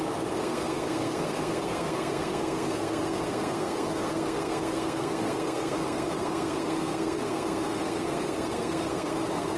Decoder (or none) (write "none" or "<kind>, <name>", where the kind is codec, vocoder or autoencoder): codec, SNAC